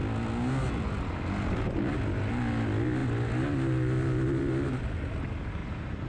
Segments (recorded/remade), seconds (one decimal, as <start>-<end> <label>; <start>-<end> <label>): 0.0-5.6 recorded; 5.6-6.1 remade